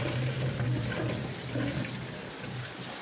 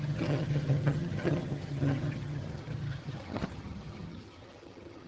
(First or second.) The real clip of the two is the first